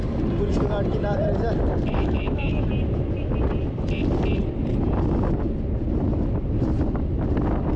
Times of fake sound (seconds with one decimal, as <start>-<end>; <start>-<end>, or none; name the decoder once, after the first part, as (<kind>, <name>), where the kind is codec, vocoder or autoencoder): 1.9-2.7 (autoencoder, DAC-VAE)

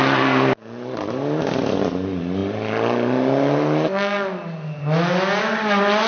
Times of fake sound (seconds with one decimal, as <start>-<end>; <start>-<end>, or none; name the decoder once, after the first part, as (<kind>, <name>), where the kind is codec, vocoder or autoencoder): none

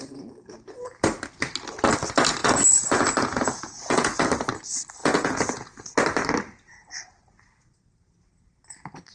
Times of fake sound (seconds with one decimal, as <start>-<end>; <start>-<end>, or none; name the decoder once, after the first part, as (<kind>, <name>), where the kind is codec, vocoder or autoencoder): 2.4-4.3 (vocoder, Vocos); 5.0-5.9